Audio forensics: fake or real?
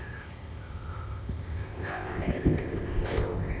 fake